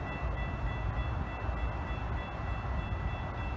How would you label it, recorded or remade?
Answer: recorded